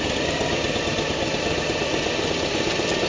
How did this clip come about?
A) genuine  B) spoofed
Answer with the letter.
A